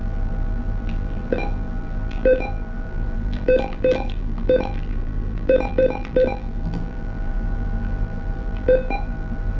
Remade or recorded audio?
remade